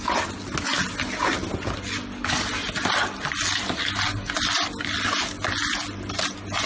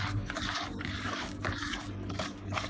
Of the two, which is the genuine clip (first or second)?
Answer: first